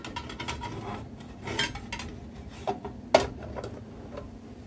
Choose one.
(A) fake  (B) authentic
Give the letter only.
B